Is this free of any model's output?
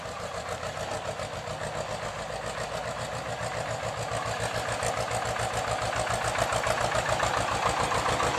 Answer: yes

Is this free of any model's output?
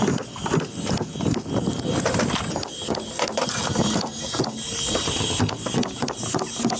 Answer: yes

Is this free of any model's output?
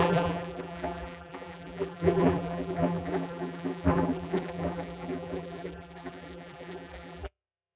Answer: no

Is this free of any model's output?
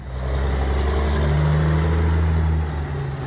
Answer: yes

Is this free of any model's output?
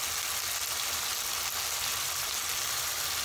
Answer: yes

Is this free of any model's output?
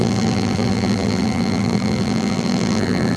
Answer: no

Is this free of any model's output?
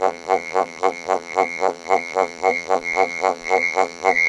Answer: no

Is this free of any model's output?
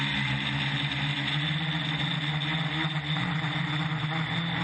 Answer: yes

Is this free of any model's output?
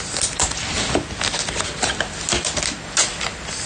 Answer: yes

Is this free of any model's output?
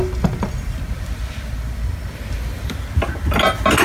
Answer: yes